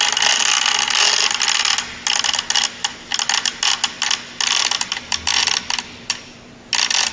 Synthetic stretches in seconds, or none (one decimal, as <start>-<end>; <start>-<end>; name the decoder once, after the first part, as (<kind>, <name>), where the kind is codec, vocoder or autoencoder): none